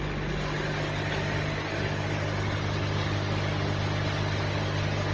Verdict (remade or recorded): recorded